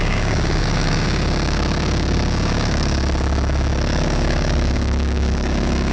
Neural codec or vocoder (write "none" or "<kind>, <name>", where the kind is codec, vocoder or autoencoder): codec, DAC